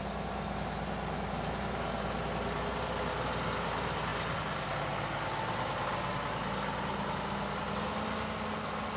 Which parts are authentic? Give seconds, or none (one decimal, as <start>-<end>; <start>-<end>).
0.0-9.0